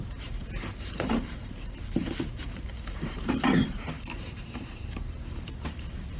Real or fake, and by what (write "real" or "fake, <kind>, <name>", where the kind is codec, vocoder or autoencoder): fake, vocoder, BigVGAN v2